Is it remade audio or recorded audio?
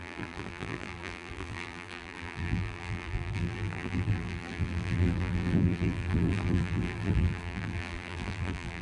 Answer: remade